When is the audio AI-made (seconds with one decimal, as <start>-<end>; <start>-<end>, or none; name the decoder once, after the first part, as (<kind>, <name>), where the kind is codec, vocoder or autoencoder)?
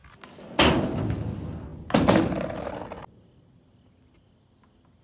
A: none